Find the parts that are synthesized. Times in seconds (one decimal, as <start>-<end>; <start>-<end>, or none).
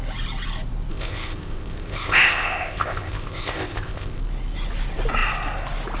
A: 0.9-4.2